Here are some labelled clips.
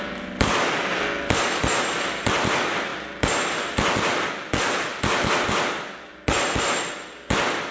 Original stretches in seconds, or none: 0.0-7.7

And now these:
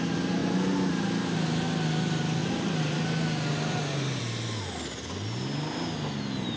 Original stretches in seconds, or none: 0.0-6.6

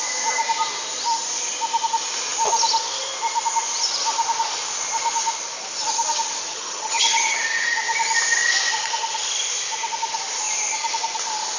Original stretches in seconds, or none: 0.0-6.5; 7.4-11.6

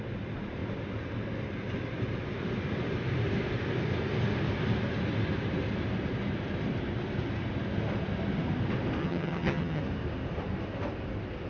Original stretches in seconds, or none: 0.0-9.0; 9.8-11.5

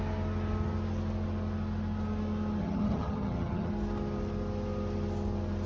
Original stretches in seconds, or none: 0.0-2.6; 3.7-5.7

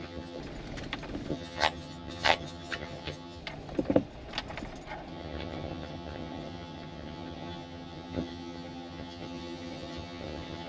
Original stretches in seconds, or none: 0.4-1.3; 3.4-5.1